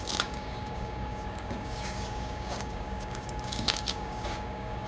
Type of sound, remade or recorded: remade